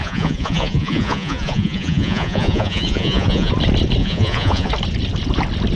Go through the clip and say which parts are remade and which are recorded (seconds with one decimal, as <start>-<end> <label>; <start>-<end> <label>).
0.0-3.5 remade; 3.5-4.0 recorded; 4.0-4.7 remade; 4.7-5.8 recorded